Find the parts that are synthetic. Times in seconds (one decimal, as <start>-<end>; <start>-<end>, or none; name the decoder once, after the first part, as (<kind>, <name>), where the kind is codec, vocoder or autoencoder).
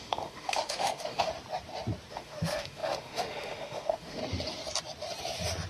0.0-1.3 (autoencoder, DAC-VAE); 2.1-4.2